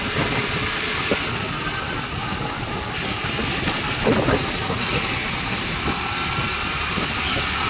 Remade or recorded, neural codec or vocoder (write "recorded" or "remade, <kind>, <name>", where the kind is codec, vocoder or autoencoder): recorded